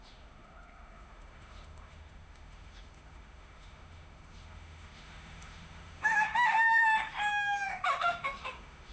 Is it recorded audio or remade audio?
remade